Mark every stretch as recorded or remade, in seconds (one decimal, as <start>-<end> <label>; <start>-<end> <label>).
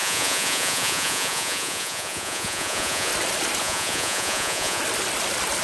0.0-3.1 remade; 3.1-3.6 recorded; 3.6-4.8 remade; 4.8-5.6 recorded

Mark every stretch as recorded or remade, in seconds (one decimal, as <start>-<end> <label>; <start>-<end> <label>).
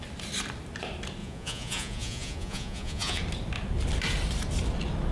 0.0-1.2 recorded; 1.2-3.2 remade; 3.2-5.1 recorded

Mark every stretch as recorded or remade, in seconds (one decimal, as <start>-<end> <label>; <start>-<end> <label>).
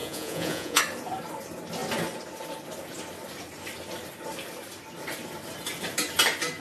0.0-0.8 remade; 0.8-6.6 recorded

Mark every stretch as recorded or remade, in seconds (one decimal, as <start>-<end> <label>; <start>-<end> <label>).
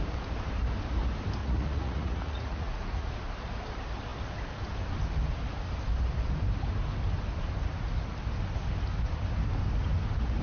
0.0-1.4 recorded; 1.4-3.1 remade; 3.1-10.4 recorded